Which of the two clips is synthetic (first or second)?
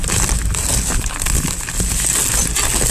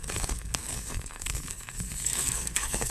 second